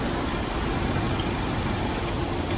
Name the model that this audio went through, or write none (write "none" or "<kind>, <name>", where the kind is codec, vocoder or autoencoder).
none